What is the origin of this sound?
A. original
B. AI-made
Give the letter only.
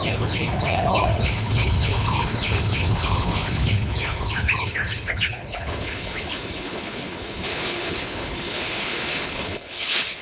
B